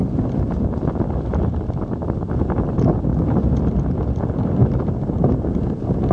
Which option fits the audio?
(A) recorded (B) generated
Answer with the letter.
A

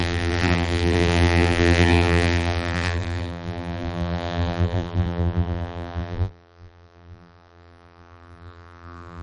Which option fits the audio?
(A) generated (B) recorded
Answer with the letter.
A